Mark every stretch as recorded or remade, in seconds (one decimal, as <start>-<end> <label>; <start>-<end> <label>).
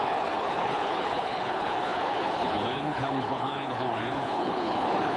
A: 0.0-5.2 remade